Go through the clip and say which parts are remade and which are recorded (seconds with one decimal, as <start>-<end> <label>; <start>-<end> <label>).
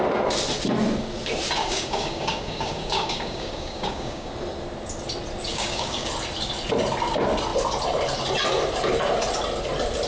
0.0-1.6 recorded; 1.6-4.3 remade; 4.3-5.5 recorded; 5.5-6.1 remade; 6.1-10.1 recorded